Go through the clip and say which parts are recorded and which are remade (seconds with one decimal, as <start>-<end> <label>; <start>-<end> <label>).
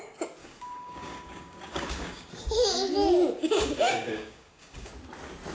0.0-0.4 recorded; 0.4-2.3 remade; 2.3-3.4 recorded; 3.4-4.9 remade; 4.9-5.5 recorded